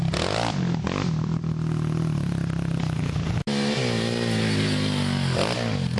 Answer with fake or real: real